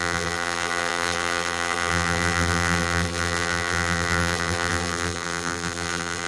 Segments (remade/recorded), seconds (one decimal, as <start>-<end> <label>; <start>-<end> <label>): 0.0-6.3 remade